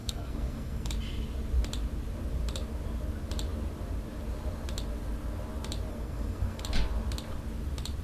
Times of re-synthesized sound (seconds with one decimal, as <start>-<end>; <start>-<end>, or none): 0.0-0.9; 5.9-6.6